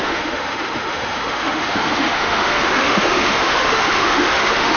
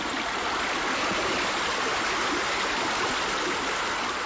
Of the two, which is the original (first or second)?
second